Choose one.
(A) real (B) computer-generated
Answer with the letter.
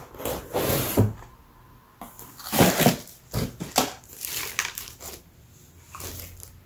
A